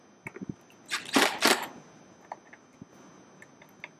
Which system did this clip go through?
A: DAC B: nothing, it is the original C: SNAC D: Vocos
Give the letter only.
B